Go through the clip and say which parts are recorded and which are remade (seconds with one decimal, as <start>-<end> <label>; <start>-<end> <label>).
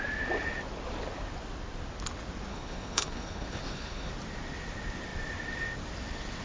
0.0-2.5 recorded; 2.5-4.1 remade; 4.1-6.4 recorded